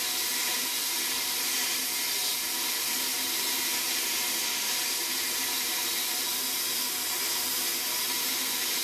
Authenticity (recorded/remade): remade